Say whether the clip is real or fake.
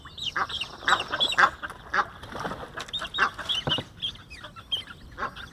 real